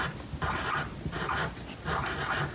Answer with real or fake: real